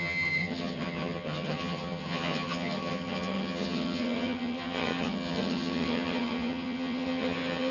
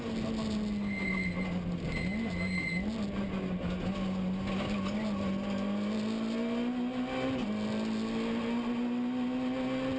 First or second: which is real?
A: second